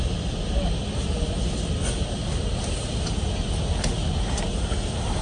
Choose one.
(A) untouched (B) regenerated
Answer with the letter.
A